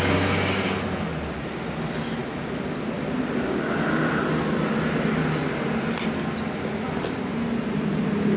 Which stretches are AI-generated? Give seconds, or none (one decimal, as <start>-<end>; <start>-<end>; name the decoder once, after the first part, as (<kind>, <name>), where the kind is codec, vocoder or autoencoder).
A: none

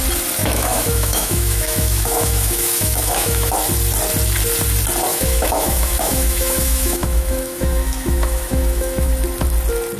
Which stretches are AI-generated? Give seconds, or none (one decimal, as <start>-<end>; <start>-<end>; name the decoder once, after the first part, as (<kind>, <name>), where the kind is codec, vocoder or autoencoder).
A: 0.4-3.5 (autoencoder, DAC-VAE); 5.1-9.1

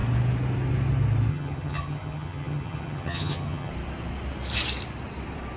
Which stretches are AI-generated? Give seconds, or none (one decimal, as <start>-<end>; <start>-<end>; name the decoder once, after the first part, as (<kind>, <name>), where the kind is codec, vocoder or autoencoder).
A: 1.3-3.7 (vocoder, HiFi-GAN)

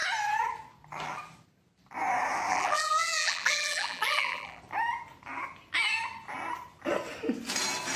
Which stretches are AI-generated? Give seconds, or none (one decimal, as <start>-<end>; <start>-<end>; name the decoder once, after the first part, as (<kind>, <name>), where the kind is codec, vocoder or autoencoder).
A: 2.5-4.6 (vocoder, BigVGAN v2)

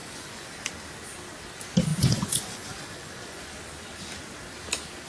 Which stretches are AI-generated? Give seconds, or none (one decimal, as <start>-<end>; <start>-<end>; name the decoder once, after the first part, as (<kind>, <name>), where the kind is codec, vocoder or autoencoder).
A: 0.0-0.5 (vocoder, Vocos); 1.9-3.5

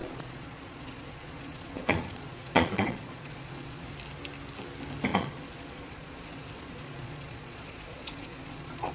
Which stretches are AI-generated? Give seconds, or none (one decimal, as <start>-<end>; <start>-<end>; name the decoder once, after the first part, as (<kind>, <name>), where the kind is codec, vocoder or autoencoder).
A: 0.0-3.9 (vocoder, Vocos); 5.1-8.9

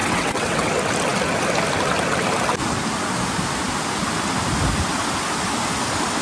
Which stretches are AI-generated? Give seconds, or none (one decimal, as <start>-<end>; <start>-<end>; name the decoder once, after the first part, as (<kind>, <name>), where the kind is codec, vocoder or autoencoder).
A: 0.0-0.7 (vocoder, WaveNeXt)